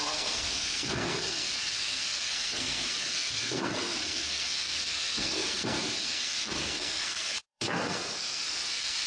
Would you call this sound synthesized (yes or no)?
yes